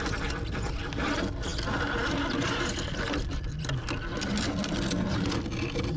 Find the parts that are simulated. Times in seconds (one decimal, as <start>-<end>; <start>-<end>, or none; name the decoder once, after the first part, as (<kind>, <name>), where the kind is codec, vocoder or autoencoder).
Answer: none